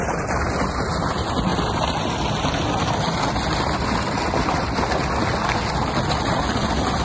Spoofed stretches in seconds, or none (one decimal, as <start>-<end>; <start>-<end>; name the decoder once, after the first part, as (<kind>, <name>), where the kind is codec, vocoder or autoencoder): none